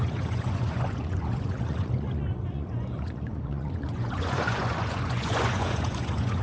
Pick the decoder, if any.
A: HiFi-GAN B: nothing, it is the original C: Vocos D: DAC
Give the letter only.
C